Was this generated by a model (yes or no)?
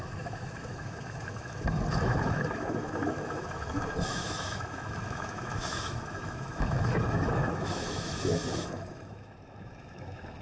yes